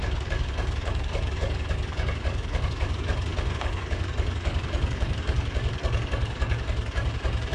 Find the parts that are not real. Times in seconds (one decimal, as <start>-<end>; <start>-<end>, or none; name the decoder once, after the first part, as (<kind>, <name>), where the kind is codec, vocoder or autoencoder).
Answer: 0.0-7.5 (codec, DAC)